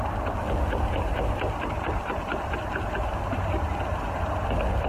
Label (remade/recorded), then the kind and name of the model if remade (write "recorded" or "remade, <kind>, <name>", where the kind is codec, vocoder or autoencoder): recorded